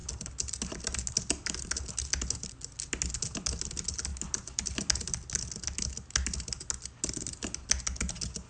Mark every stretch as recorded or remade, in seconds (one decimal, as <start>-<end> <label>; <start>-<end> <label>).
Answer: 0.0-8.5 recorded